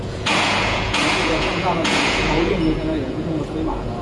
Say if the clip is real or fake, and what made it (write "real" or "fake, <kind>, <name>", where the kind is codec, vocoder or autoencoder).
fake, vocoder, Vocos